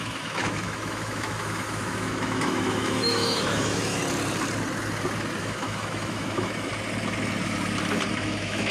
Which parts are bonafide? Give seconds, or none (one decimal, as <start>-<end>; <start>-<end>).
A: 4.0-5.4; 6.7-8.1